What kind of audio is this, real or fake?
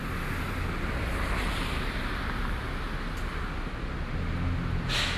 real